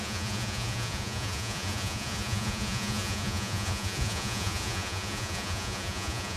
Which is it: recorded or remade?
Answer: remade